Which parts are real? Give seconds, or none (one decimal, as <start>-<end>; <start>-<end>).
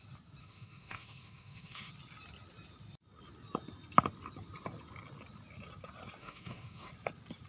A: 0.0-0.4; 1.9-6.2; 6.9-7.5